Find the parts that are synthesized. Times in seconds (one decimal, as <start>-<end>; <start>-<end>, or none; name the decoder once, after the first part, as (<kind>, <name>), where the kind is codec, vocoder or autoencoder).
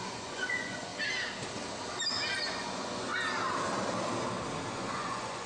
0.0-0.9 (vocoder, Vocos); 2.5-3.1; 4.7-5.5